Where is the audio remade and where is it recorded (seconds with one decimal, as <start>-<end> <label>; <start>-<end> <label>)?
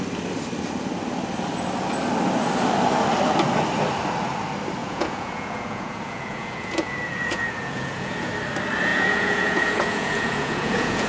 0.0-4.8 recorded; 4.8-8.3 remade; 8.3-8.9 recorded; 8.9-11.1 remade